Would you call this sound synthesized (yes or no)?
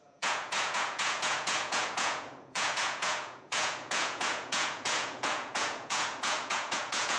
yes